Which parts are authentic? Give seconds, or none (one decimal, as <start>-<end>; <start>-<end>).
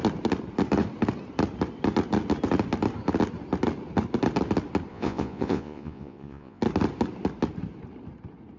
0.0-4.9; 6.6-8.6